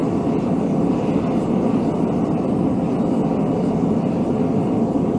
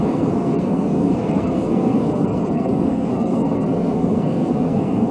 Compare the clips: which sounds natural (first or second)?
first